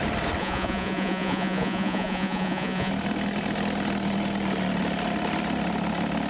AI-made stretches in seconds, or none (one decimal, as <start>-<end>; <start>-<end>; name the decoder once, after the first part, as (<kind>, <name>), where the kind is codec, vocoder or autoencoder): 0.4-2.9 (vocoder, Vocos)